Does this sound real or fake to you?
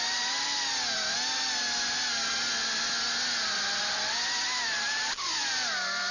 real